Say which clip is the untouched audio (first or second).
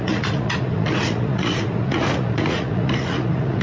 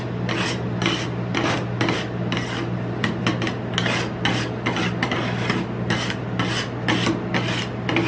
second